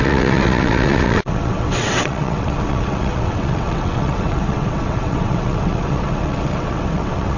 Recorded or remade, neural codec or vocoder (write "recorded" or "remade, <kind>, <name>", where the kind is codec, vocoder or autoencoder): remade, vocoder, WaveNeXt